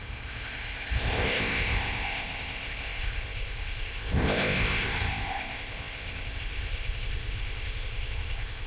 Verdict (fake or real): fake